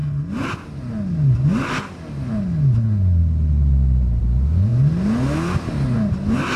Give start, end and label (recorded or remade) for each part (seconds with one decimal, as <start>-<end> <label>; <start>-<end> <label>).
0.0-6.6 recorded